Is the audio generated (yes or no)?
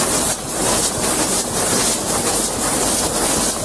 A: no